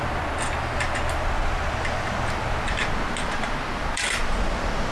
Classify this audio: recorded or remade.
recorded